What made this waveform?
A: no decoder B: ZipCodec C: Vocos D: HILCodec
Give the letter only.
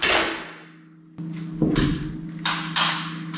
A